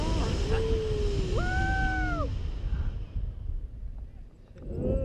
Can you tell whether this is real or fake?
real